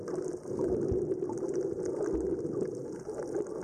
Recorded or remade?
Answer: recorded